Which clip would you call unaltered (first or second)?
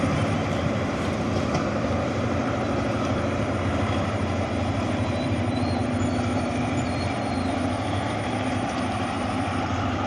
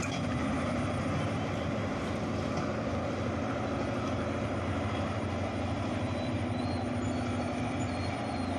second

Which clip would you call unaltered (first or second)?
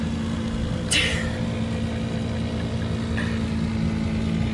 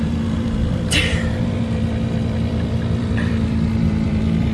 first